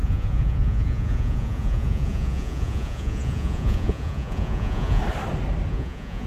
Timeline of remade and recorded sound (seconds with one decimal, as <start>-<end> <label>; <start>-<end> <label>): 0.0-5.0 remade; 5.0-5.7 recorded; 5.7-6.3 remade